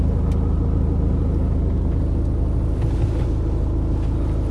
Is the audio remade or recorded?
recorded